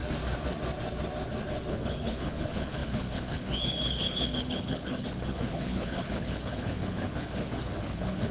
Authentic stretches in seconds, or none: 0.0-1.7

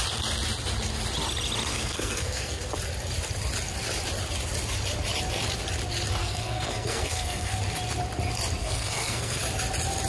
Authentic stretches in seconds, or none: 0.0-1.7; 2.6-6.2; 7.6-8.6; 9.4-10.1

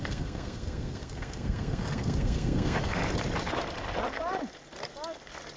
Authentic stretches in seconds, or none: 3.0-5.6